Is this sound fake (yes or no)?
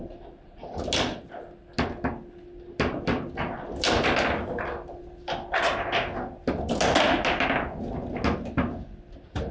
no